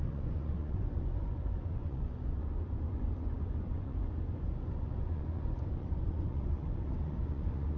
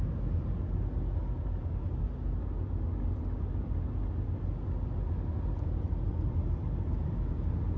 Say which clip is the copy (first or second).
first